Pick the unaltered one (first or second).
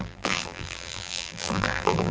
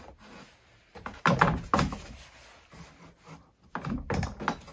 second